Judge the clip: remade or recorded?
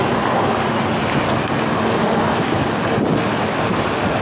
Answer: recorded